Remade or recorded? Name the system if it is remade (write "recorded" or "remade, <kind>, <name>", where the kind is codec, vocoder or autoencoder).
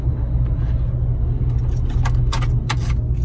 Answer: recorded